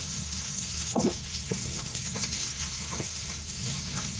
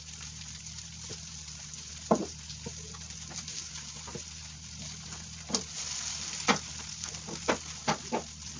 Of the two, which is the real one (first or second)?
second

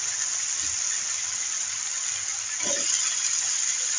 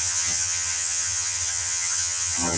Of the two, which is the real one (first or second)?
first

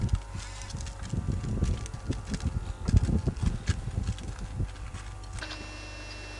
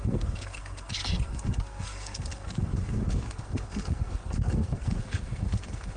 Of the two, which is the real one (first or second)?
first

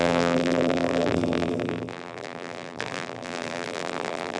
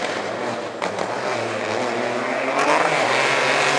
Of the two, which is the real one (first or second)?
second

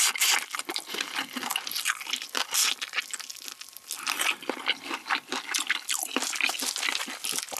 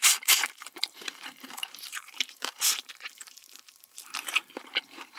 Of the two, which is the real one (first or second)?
first